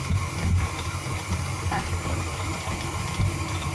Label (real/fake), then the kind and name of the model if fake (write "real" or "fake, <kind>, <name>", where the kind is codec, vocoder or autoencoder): fake, vocoder, BigVGAN v2